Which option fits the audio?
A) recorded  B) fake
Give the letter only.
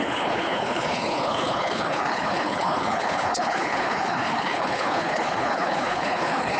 B